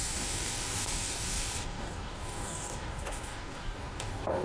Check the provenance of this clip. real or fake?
fake